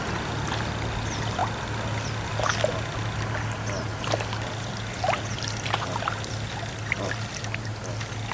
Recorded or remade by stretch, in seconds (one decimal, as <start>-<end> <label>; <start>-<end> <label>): 0.0-8.3 recorded